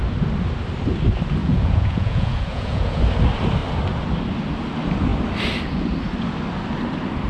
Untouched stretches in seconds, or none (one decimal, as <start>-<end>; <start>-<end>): 0.0-1.4; 3.0-7.3